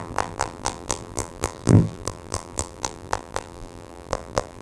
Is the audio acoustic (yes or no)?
no